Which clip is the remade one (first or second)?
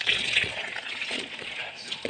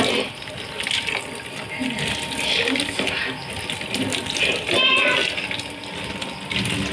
first